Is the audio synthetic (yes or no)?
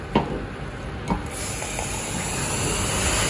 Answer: no